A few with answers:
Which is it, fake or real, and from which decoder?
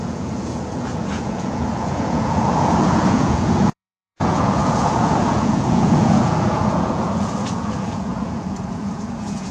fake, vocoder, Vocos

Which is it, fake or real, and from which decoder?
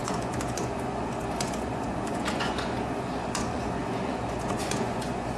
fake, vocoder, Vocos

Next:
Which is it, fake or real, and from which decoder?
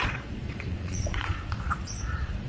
fake, vocoder, Vocos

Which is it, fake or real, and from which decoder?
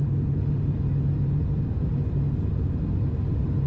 real